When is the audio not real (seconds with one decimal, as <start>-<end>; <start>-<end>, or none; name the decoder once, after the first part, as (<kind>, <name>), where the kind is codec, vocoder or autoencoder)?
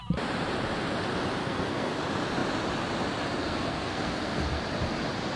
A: 1.4-1.9 (codec, SNAC); 3.4-4.6